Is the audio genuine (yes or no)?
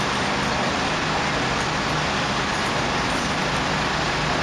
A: yes